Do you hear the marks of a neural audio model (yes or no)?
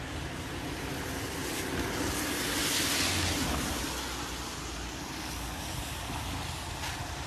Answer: no